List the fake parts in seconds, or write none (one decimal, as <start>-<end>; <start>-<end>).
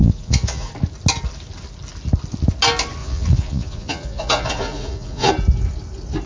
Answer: 0.0-0.7; 3.0-5.3